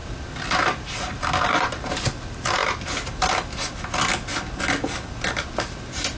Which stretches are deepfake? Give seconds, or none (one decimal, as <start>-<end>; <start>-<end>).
none